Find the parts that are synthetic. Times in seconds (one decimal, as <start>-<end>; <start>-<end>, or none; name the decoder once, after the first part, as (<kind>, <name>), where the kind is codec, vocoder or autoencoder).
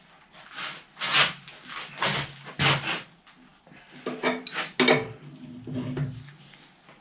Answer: none